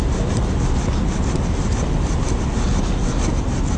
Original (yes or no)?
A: yes